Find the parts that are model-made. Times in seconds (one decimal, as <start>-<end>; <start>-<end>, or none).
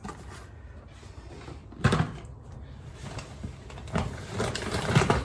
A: 1.6-2.5